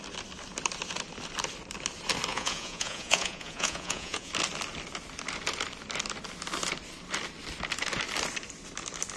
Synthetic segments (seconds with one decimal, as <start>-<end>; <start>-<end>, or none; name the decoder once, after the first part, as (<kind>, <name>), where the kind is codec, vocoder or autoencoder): 2.3-4.3 (vocoder, Vocos)